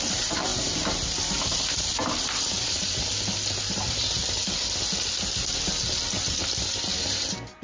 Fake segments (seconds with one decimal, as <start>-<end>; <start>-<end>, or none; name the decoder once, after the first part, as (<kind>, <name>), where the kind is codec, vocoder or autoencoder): 0.0-0.5 (vocoder, BigVGAN v2); 3.5-4.4; 7.0-7.6